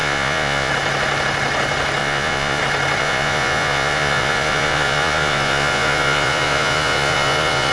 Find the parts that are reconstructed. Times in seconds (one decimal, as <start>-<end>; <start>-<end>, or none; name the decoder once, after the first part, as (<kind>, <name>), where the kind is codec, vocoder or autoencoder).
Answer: 0.0-0.7 (vocoder, Vocos); 2.0-2.6; 3.0-7.7